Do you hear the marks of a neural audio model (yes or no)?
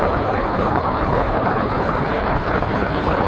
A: yes